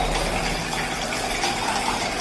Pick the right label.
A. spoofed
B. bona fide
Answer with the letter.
B